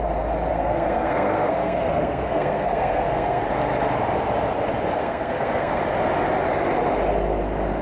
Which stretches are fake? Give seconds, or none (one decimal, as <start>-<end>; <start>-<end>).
0.5-3.4; 5.0-5.8